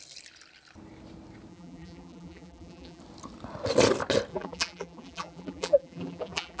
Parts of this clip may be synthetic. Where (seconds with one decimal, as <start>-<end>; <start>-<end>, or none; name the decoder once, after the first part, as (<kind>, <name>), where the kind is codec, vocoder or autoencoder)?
1.5-3.0 (vocoder, BigVGAN v2); 4.3-6.6